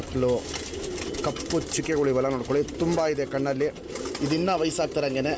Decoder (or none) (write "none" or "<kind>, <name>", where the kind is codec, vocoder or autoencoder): none